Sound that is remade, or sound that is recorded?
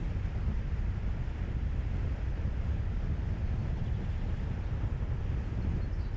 recorded